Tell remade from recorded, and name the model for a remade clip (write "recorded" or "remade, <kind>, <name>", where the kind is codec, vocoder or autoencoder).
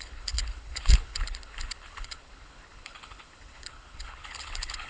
remade, codec, HILCodec